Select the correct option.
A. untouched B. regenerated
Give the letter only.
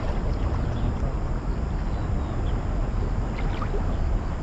A